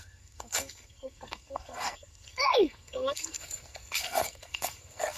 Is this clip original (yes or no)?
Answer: no